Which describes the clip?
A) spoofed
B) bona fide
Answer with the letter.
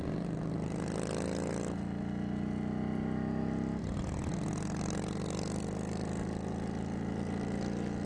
B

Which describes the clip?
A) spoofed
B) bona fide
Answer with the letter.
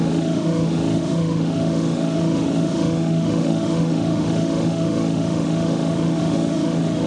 A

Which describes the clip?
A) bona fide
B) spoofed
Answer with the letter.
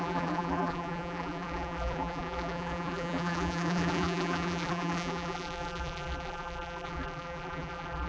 B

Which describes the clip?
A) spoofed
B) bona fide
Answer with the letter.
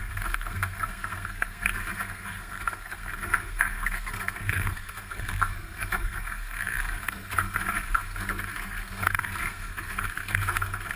A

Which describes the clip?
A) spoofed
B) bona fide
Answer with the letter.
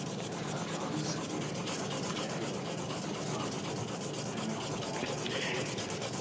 B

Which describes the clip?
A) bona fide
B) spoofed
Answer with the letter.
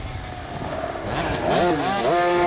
A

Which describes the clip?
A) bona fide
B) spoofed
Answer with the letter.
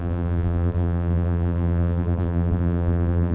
B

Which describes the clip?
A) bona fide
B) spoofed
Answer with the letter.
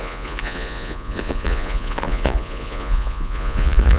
B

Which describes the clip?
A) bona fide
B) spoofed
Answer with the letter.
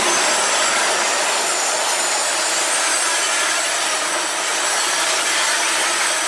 A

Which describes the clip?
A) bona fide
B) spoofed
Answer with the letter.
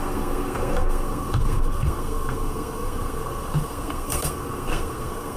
B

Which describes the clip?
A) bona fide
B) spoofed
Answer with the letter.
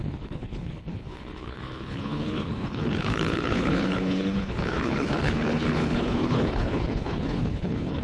B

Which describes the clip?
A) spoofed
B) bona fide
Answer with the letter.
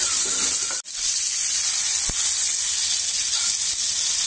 B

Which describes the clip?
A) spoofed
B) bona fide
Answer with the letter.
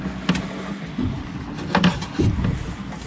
B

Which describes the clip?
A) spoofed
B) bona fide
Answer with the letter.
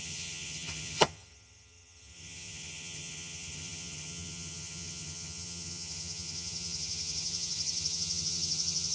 A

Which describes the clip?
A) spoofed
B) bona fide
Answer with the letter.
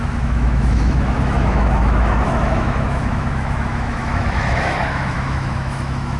A